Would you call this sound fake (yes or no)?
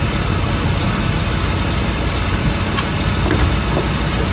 no